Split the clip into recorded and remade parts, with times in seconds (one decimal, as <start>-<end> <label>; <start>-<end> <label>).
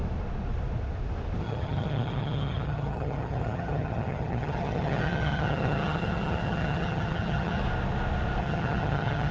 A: 0.0-1.4 recorded; 1.4-7.6 remade; 7.6-8.4 recorded; 8.4-9.3 remade